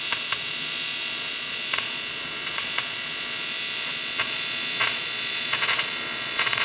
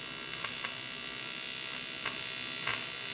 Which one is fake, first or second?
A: first